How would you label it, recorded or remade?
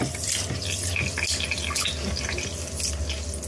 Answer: recorded